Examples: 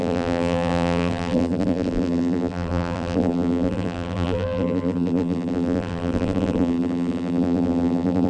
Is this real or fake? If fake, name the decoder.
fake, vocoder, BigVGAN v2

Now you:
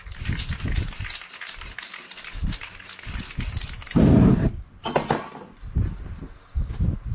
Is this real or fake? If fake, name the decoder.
real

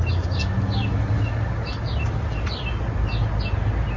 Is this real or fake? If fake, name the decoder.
real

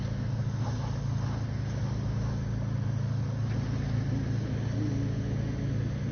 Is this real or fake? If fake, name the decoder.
real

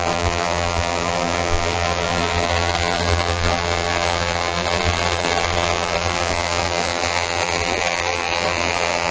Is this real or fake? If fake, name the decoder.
fake, vocoder, BigVGAN v2